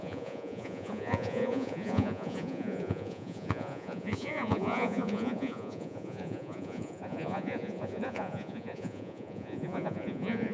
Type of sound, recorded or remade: remade